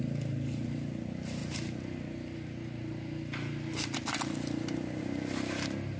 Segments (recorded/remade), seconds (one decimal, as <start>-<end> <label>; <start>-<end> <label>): 0.0-6.0 recorded